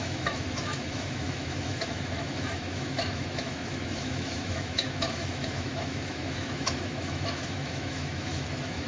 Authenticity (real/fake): fake